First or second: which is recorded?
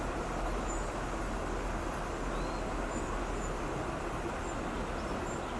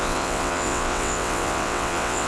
first